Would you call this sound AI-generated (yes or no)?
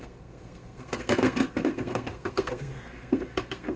yes